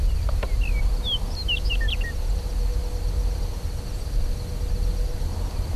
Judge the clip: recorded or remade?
recorded